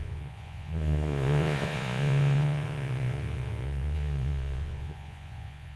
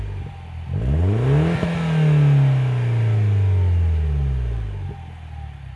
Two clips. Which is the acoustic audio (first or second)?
second